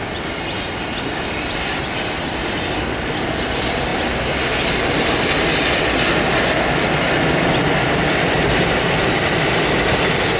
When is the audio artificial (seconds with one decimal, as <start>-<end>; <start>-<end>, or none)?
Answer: none